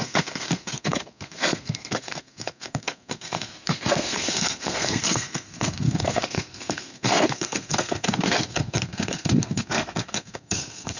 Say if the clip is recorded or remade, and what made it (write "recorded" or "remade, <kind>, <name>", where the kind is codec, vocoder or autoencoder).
remade, codec, SNAC